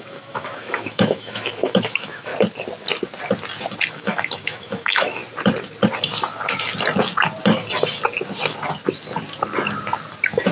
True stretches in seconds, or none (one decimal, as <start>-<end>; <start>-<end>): 2.3-3.9; 5.2-10.5